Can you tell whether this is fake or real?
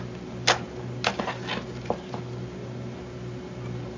real